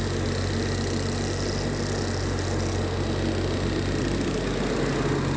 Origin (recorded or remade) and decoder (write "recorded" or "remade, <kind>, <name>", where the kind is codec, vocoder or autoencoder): recorded